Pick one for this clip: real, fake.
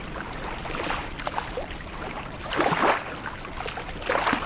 real